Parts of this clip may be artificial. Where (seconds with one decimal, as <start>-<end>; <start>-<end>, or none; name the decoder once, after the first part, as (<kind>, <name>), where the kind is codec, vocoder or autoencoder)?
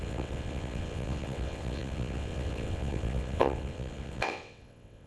0.0-5.1 (vocoder, WaveNeXt)